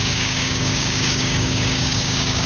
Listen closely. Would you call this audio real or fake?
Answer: fake